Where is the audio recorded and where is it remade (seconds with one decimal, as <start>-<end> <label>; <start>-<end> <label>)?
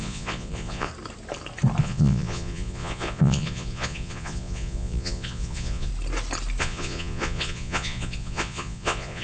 0.0-0.9 remade; 0.9-1.8 recorded; 1.8-5.9 remade; 5.9-6.6 recorded; 6.6-9.2 remade